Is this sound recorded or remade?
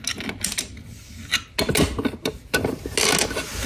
recorded